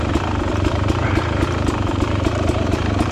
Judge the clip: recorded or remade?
remade